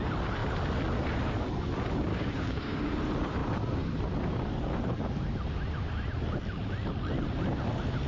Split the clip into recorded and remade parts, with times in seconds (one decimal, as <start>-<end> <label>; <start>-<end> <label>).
0.0-2.1 recorded; 2.1-3.0 remade; 3.0-8.1 recorded